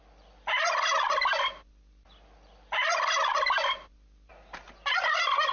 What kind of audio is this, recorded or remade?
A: recorded